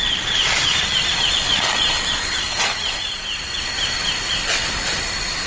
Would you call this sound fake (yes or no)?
yes